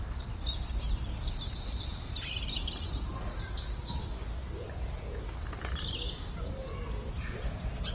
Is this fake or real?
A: real